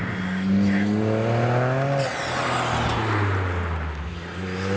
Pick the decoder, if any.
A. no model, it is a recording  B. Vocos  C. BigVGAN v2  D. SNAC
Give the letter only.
A